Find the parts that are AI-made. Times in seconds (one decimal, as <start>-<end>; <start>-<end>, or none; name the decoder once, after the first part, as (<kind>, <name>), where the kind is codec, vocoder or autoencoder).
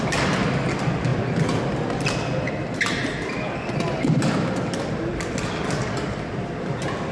none